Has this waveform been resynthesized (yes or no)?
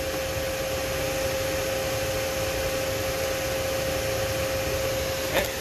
no